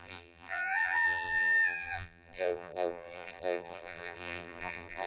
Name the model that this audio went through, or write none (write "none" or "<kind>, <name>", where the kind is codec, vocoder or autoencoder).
vocoder, BigVGAN v2